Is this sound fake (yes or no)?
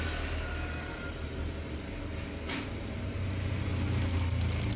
no